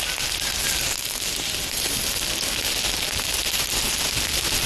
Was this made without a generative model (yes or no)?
yes